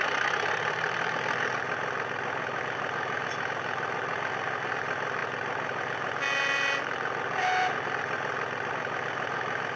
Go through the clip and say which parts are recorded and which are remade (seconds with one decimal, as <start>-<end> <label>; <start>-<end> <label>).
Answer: 0.0-9.8 recorded